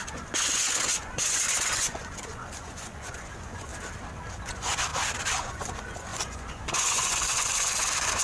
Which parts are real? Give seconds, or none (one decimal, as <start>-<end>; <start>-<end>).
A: 3.7-4.4; 4.9-5.4